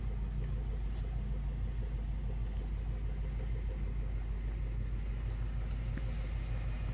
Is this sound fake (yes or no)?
no